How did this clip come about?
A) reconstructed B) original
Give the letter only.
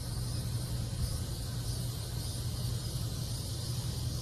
B